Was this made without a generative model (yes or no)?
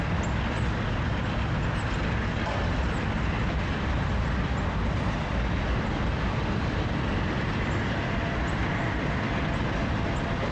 yes